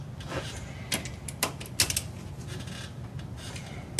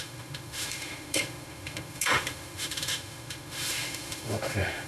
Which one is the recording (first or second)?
first